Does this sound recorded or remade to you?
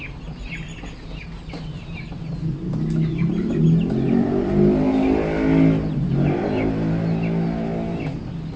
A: recorded